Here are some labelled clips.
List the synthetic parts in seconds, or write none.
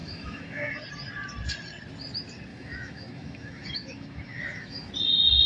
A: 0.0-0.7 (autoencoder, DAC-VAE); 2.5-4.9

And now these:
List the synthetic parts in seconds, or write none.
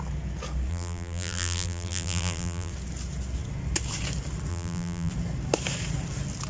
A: 0.7-2.7 (vocoder, BigVGAN v2); 4.5-5.1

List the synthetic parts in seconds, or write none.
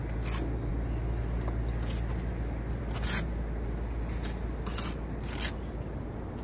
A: none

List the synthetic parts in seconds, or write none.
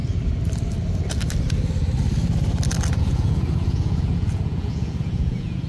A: 3.0-5.7 (vocoder, Vocos)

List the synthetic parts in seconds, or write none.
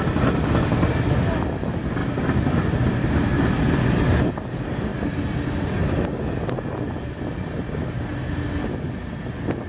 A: none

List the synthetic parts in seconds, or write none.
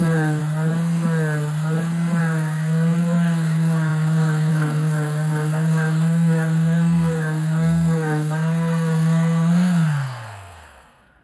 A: 0.0-0.4 (codec, SNAC); 2.2-11.2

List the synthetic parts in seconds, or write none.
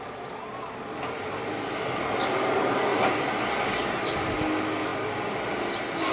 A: none